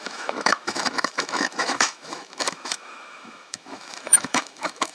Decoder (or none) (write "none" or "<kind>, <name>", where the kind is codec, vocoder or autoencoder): autoencoder, DAC-VAE